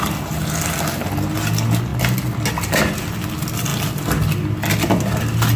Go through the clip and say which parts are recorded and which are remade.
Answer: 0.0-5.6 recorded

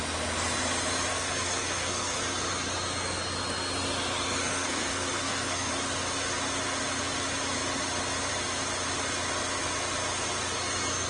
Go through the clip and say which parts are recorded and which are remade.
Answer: 0.0-1.1 recorded; 1.1-2.2 remade; 2.2-4.5 recorded; 4.5-5.7 remade; 5.7-11.1 recorded

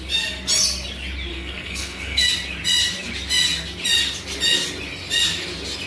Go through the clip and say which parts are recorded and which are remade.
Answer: 0.0-1.3 recorded; 1.3-2.3 remade; 2.3-5.9 recorded